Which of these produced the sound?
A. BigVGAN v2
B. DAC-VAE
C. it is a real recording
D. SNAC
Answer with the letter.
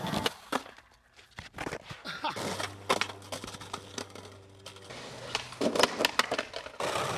C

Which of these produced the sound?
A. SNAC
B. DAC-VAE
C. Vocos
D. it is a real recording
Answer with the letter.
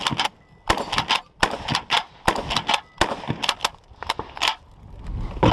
D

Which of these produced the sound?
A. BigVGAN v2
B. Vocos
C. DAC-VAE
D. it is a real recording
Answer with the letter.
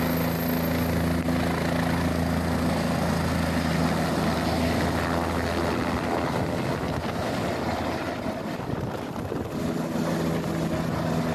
D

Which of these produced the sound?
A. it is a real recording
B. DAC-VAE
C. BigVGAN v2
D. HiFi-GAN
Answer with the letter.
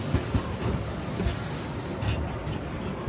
A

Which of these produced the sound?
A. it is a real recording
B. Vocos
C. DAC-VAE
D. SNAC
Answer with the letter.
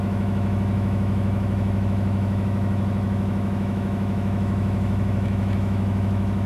C